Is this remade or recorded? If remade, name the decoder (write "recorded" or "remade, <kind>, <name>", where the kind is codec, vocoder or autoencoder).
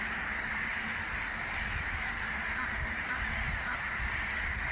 recorded